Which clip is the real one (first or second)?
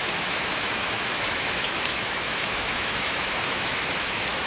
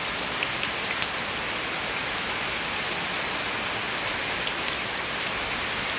second